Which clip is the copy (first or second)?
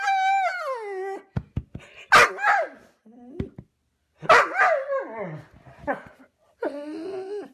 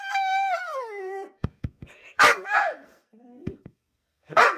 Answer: second